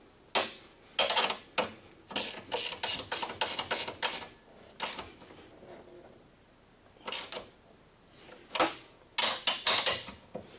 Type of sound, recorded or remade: recorded